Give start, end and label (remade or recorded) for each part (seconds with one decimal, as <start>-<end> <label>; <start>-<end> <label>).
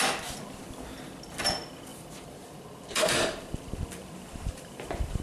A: 0.0-1.9 recorded; 1.9-5.2 remade